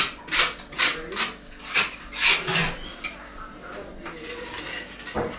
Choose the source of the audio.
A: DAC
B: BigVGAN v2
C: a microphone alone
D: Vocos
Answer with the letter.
C